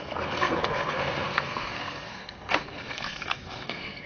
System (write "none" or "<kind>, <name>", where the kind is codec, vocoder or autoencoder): codec, SNAC